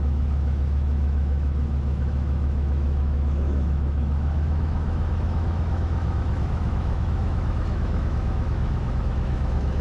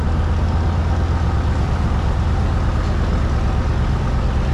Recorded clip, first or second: second